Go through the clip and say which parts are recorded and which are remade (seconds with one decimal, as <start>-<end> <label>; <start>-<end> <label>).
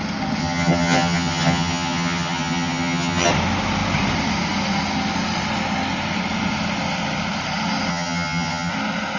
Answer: 0.0-0.4 recorded; 0.4-3.3 remade; 3.3-7.9 recorded; 7.9-8.7 remade; 8.7-9.2 recorded